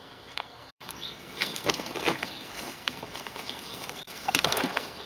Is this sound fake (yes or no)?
yes